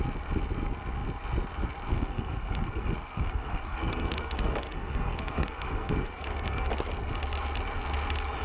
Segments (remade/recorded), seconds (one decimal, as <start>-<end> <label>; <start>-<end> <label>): 0.0-1.9 recorded; 1.9-6.7 remade; 6.7-8.4 recorded